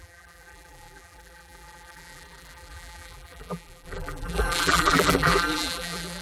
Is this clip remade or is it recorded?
remade